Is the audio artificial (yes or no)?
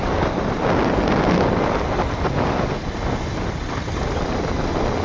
no